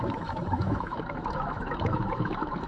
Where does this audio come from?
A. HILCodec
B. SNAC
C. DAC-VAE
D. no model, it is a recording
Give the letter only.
C